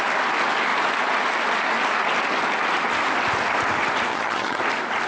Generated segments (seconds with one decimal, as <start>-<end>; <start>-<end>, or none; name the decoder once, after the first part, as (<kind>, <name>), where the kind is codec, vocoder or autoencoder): 4.1-4.6 (vocoder, HiFi-GAN)